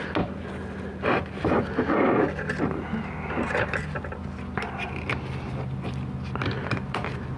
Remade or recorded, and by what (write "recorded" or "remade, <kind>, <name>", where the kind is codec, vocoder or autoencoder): recorded